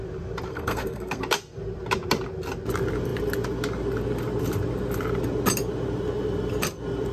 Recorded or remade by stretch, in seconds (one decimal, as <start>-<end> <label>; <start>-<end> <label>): 0.0-0.5 recorded; 0.5-1.2 remade; 1.2-7.1 recorded